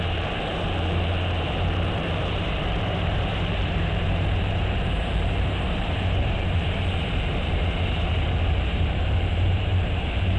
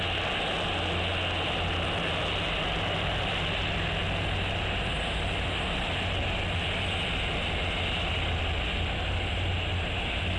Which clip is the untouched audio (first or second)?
second